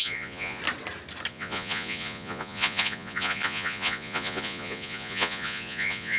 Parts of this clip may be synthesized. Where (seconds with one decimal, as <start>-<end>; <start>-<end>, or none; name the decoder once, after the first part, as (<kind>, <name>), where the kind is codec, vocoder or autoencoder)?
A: 0.0-0.6 (vocoder, Vocos); 1.3-6.2